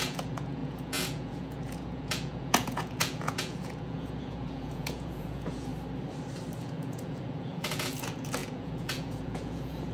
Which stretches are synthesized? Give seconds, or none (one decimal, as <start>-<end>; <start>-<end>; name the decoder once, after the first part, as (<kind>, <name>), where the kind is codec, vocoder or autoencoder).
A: 0.0-5.7 (vocoder, Vocos); 6.6-9.9